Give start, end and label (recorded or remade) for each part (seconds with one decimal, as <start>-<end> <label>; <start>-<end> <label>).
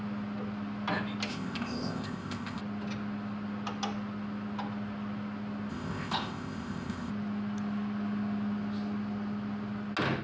0.0-1.3 recorded; 1.3-2.6 remade; 2.6-5.7 recorded; 5.7-7.1 remade; 7.1-10.2 recorded